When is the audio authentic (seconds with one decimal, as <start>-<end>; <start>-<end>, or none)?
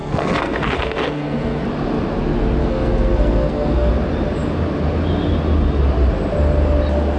1.6-2.6; 3.9-7.2